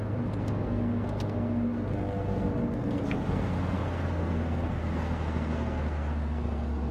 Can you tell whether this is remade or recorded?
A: remade